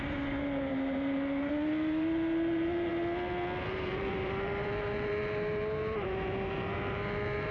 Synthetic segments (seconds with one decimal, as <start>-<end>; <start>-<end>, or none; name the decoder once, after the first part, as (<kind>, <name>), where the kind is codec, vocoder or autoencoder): 0.0-2.9 (vocoder, BigVGAN v2); 3.7-7.5

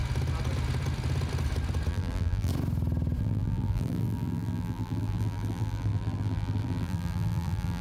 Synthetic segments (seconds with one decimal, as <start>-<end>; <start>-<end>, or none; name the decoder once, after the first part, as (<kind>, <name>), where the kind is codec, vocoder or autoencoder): 1.9-2.5 (vocoder, BigVGAN v2); 3.2-7.8

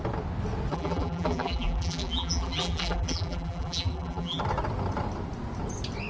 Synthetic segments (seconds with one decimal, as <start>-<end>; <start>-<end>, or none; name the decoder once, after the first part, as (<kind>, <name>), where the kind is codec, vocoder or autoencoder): 0.7-4.4 (vocoder, BigVGAN v2)